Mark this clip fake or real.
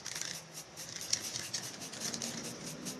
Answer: real